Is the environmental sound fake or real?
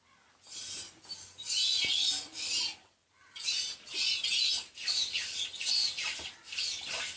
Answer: real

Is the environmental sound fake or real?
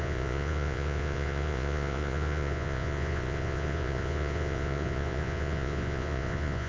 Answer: fake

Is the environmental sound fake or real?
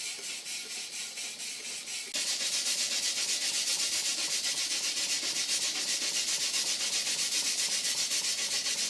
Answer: real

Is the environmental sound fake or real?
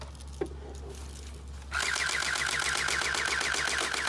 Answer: real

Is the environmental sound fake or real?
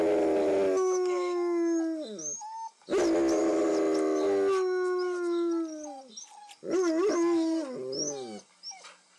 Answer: real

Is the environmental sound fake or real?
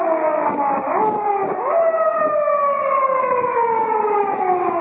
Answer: fake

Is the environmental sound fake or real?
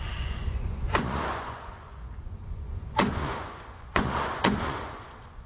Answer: fake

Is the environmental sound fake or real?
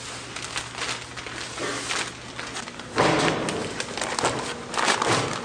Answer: real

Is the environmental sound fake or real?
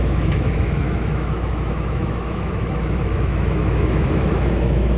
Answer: fake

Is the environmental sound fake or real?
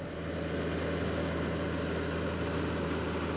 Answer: real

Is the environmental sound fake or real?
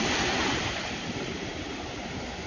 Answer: fake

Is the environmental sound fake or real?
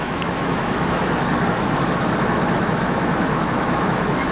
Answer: fake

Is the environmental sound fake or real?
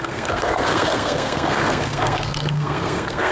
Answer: fake